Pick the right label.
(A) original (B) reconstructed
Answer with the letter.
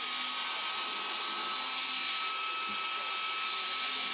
A